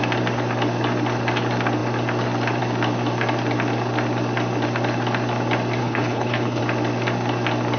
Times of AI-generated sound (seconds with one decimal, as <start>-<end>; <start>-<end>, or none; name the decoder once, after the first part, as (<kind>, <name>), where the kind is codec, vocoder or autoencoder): 5.8-6.6 (codec, HILCodec)